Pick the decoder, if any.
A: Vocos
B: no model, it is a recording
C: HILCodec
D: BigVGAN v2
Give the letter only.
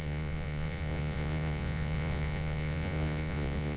A